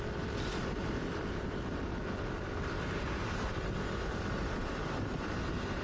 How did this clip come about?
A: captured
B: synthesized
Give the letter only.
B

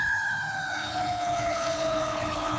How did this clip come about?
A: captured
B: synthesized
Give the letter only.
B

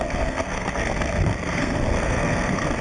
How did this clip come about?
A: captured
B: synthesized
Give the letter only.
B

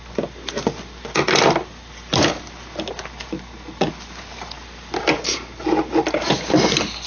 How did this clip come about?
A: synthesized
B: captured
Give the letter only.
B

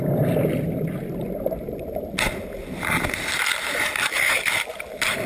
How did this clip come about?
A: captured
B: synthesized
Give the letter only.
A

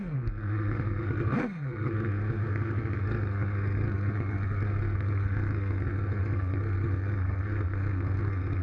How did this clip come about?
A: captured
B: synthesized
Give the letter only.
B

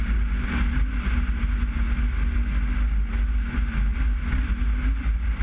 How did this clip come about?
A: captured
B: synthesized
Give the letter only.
A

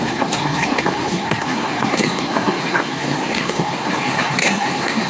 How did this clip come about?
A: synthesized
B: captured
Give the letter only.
A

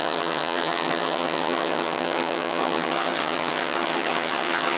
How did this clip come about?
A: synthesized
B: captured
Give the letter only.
A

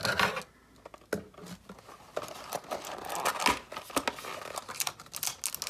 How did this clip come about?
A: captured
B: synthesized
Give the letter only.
A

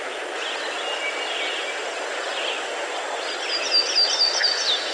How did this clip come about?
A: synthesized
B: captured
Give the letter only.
B